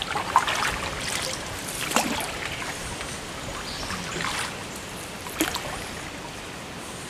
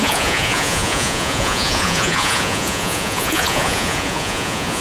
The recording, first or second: first